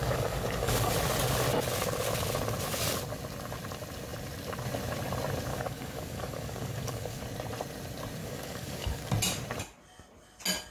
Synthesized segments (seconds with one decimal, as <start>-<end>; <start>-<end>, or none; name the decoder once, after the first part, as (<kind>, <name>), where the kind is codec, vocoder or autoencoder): 0.0-0.9 (codec, DAC); 5.5-7.2; 8.2-9.1